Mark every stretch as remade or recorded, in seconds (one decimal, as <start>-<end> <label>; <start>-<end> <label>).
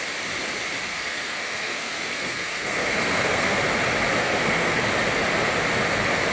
0.0-0.9 recorded; 0.9-3.6 remade; 3.6-4.2 recorded; 4.2-4.9 remade; 4.9-6.3 recorded